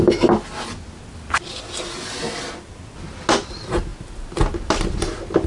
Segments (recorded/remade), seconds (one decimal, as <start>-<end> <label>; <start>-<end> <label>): 0.0-5.5 recorded